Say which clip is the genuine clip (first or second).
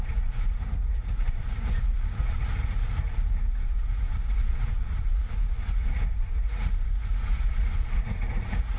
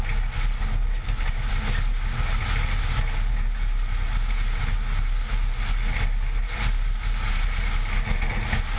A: second